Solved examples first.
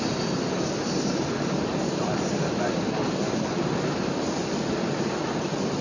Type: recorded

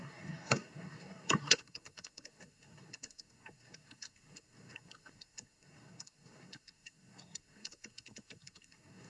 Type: remade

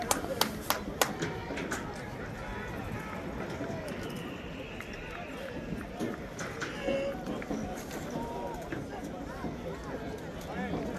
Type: recorded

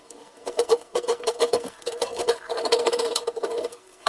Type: remade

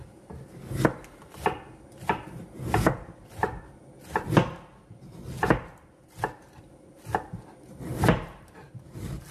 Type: recorded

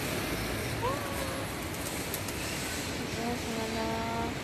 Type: recorded